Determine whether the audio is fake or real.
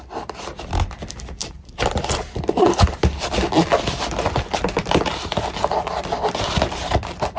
fake